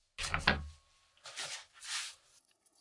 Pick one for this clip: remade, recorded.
recorded